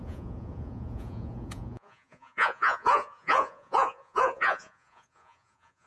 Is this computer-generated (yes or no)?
yes